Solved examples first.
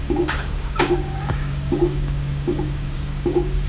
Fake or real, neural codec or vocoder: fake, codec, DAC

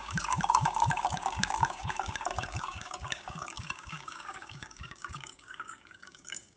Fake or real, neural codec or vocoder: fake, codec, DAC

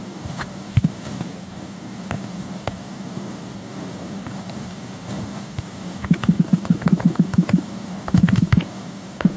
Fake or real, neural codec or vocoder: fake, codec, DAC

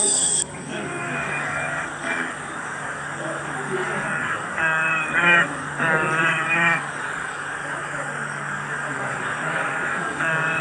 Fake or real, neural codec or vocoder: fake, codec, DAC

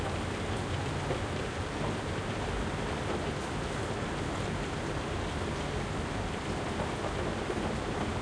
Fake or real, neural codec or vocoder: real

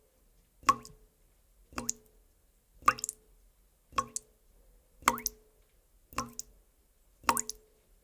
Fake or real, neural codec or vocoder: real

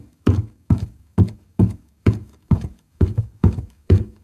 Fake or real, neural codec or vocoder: fake, codec, DAC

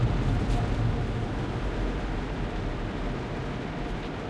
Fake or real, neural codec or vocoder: real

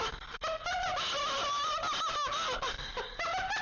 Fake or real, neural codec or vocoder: real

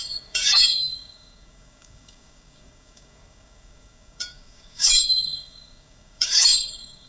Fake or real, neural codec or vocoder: fake, codec, DAC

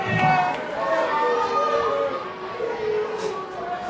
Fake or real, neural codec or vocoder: real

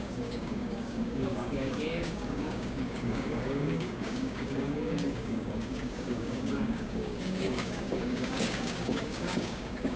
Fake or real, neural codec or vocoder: fake, codec, DAC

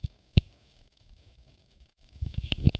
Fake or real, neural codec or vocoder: fake, codec, DAC